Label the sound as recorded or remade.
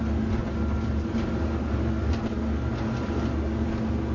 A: recorded